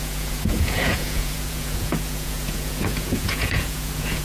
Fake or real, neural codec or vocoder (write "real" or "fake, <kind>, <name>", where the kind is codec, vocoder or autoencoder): fake, vocoder, Vocos